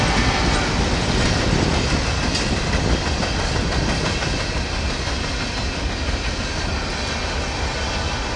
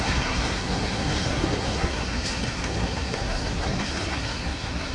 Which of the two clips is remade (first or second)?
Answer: second